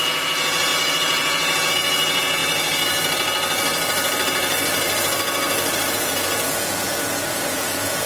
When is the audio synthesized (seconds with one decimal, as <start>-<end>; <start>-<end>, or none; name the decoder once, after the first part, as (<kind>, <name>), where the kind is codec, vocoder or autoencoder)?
0.0-2.4 (vocoder, Vocos); 5.9-8.1